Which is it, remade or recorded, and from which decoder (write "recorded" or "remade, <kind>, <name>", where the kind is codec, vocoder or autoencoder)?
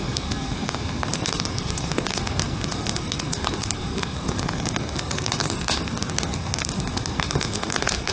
remade, codec, SNAC